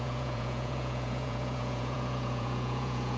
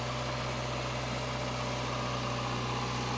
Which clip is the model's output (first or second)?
first